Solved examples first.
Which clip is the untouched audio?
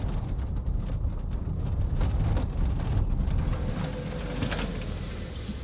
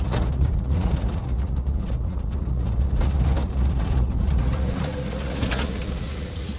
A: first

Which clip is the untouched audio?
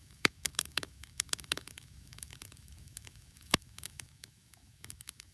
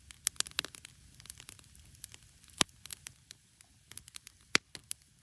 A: second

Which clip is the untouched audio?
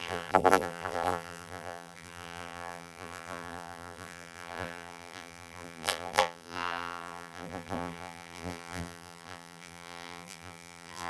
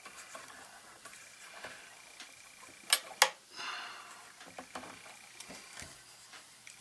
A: second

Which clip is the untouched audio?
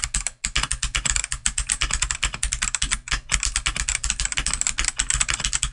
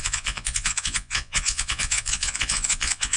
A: first